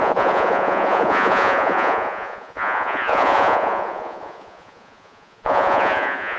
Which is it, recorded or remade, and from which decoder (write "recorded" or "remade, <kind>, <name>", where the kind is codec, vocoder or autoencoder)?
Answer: remade, vocoder, Vocos